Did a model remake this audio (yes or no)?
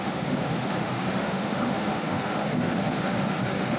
yes